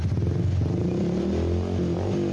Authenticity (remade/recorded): recorded